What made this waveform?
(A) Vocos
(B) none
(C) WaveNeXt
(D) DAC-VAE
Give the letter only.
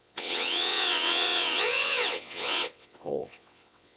C